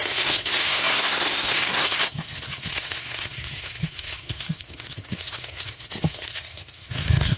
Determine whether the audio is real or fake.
fake